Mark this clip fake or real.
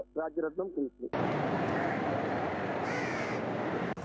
real